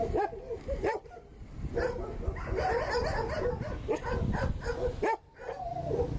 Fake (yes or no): no